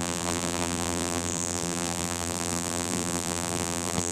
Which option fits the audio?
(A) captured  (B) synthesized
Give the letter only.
B